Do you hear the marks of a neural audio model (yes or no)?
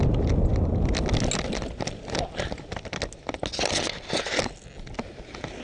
no